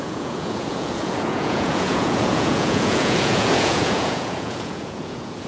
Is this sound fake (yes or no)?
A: yes